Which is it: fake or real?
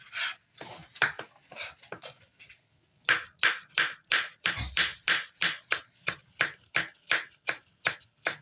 real